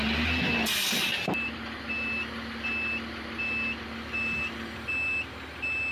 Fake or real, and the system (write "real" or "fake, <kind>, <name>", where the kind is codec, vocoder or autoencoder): real